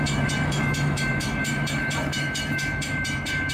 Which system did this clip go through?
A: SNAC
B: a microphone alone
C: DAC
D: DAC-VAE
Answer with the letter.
D